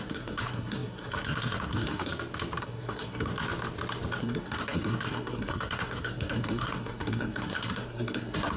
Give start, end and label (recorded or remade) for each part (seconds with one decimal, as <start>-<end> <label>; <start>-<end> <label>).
0.0-2.1 remade; 2.1-2.6 recorded; 2.6-3.3 remade; 3.3-4.2 recorded; 4.2-8.6 remade